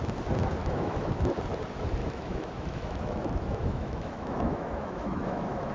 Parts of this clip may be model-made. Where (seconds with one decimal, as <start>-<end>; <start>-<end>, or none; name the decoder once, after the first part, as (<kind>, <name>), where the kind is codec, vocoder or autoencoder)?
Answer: 0.6-1.3 (autoencoder, DAC-VAE); 2.0-5.7